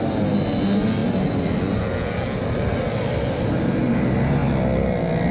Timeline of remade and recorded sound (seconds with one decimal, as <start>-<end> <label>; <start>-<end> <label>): 0.0-5.3 recorded